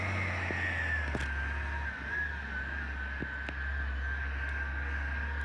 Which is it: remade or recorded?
recorded